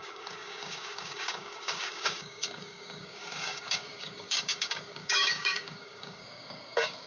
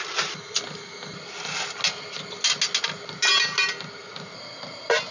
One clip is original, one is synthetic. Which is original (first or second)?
second